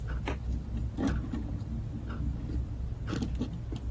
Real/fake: real